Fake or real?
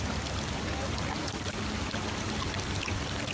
real